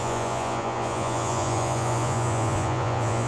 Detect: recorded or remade remade